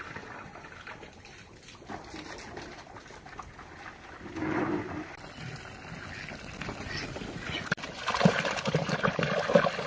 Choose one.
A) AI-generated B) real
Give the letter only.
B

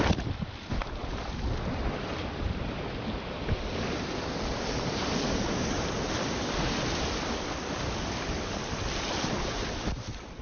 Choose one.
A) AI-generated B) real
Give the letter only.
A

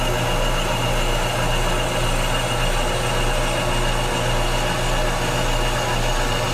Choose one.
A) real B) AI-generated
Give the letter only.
A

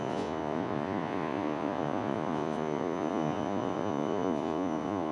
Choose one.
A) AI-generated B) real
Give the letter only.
A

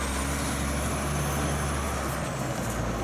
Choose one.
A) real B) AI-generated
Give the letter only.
A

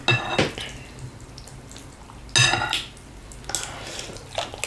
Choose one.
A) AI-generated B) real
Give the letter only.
B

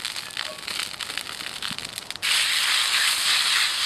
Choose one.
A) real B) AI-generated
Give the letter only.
A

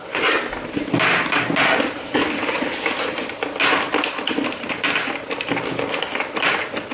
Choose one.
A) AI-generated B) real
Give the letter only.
B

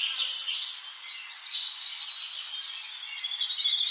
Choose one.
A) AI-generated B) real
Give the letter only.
B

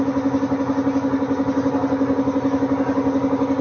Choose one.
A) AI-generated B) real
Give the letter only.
B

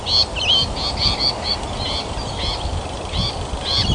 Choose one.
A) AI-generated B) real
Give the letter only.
B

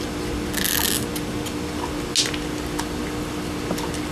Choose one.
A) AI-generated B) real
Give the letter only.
B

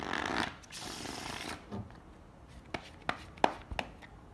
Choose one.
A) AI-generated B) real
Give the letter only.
B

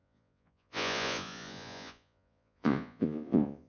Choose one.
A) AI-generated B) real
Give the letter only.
A